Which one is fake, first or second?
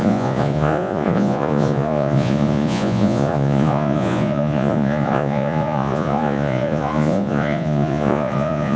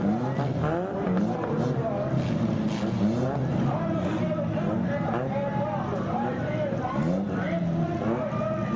first